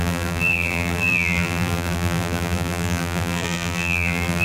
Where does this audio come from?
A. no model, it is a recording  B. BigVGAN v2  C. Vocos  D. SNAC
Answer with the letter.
B